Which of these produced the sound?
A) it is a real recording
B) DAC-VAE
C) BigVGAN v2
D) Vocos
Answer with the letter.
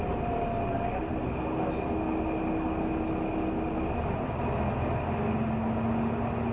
A